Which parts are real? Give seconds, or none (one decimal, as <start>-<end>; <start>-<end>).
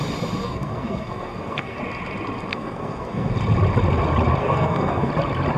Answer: 0.0-0.4; 1.8-2.5; 3.3-4.4; 5.1-5.6